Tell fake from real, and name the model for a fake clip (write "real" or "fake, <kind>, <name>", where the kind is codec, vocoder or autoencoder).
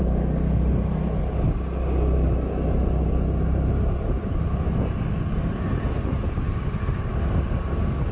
real